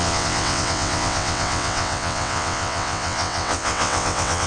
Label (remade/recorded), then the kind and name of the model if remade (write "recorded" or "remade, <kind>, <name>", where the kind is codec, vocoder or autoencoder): remade, vocoder, WaveNeXt